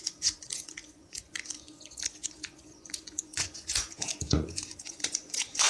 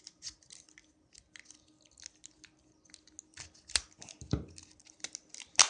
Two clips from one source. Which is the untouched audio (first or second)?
second